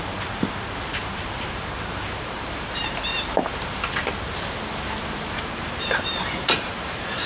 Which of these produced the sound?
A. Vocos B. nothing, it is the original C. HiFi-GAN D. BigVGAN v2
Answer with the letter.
D